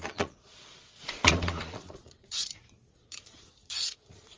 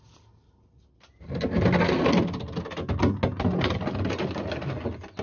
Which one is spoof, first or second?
first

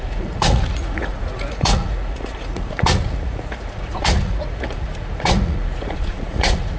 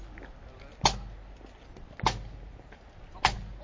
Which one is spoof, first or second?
first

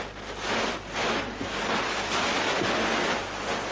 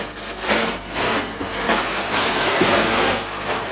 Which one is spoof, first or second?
second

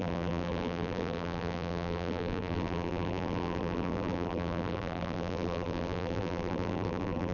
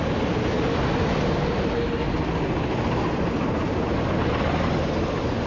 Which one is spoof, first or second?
first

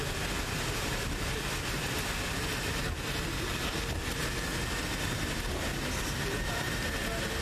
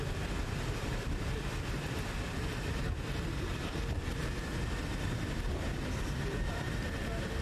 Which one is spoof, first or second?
second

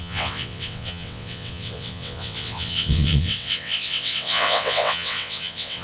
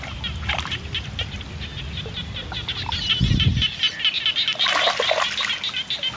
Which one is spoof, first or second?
first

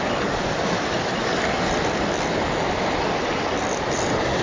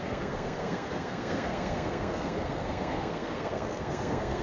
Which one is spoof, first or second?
second